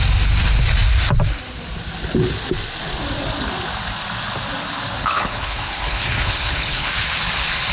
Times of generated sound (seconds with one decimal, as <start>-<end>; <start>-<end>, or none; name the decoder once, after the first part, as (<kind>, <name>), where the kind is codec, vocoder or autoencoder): 5.0-6.9 (codec, HILCodec)